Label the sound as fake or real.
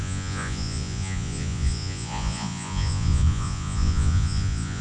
fake